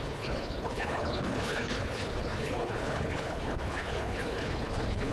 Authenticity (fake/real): fake